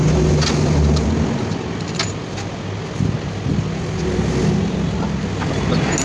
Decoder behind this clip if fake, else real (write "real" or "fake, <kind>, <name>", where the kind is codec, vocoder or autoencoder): real